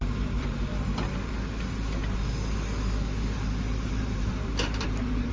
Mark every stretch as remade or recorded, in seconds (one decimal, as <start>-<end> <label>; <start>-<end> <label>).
0.0-0.7 remade; 0.7-3.9 recorded; 3.9-5.3 remade